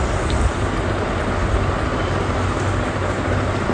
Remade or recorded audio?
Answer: recorded